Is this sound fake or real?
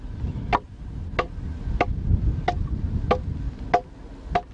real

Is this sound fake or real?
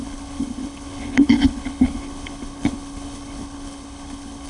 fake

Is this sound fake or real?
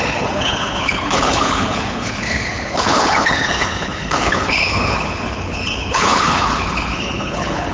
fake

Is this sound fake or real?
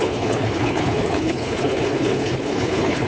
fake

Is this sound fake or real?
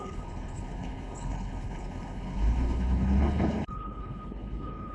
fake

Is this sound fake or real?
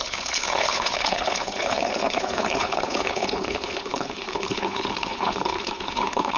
fake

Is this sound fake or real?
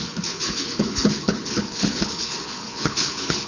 fake